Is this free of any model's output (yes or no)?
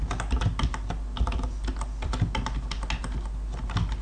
yes